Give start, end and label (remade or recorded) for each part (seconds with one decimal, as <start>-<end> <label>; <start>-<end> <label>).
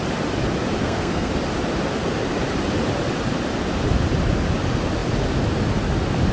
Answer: 0.0-0.8 recorded; 0.8-1.3 remade; 1.3-6.3 recorded